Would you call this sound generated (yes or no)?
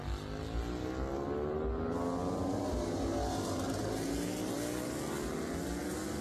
no